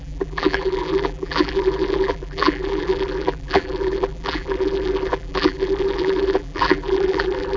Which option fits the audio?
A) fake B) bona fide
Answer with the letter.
A